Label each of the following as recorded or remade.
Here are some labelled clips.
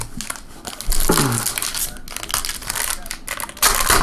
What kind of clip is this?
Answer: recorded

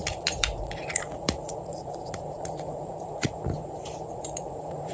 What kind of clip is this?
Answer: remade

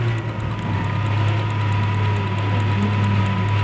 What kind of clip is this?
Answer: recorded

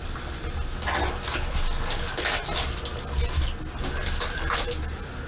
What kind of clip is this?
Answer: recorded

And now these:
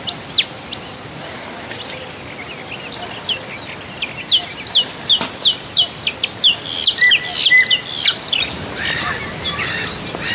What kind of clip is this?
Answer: recorded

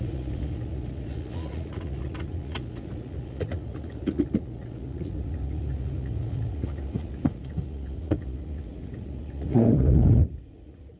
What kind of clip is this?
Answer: remade